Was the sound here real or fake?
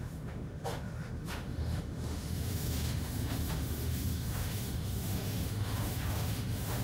fake